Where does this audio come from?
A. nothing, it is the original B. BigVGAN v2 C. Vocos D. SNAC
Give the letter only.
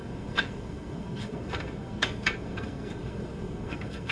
D